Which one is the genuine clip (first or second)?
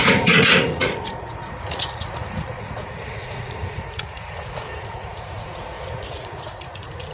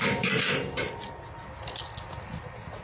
second